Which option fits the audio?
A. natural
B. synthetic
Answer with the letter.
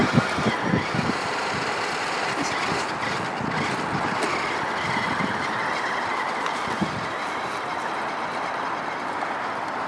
A